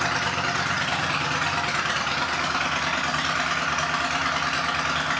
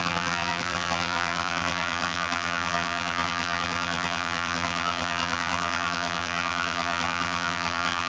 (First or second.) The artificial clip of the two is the second